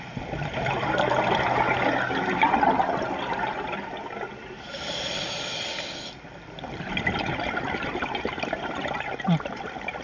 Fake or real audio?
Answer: real